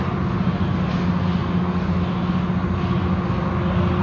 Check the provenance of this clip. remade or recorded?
recorded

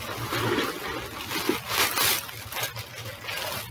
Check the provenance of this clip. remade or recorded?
recorded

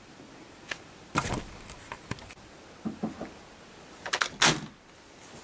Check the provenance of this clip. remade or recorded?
recorded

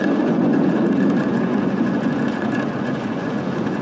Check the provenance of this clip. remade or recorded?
remade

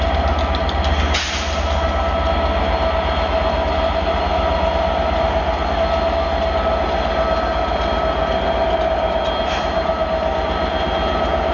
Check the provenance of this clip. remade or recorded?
recorded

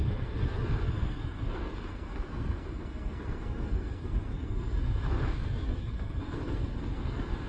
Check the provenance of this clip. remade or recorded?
remade